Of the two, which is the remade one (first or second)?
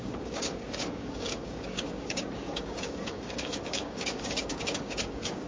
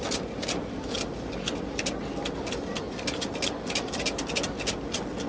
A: first